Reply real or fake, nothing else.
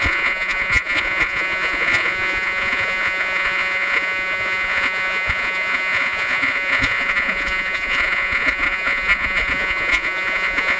fake